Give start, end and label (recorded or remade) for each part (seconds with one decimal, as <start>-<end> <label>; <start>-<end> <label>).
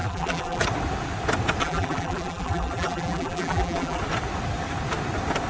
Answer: 0.0-0.6 remade; 0.6-1.6 recorded; 1.6-4.0 remade; 4.0-5.5 recorded